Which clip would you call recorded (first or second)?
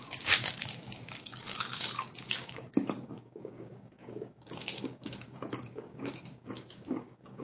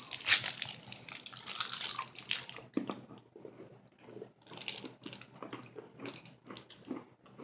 second